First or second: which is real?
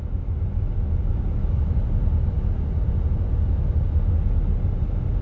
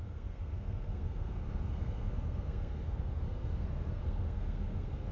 first